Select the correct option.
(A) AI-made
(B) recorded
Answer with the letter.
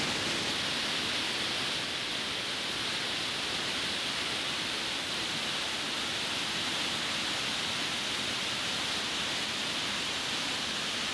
B